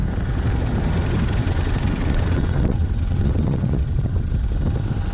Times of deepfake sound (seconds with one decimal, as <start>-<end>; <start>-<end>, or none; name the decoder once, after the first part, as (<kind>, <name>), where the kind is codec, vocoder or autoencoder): 1.4-4.3 (vocoder, WaveNeXt)